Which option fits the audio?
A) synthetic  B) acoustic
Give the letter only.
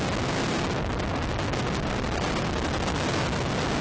B